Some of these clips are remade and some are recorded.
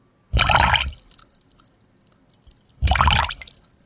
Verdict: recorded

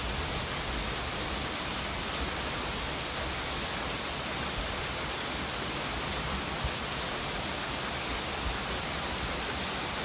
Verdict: recorded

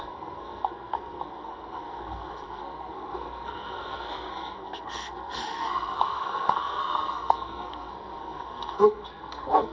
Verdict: remade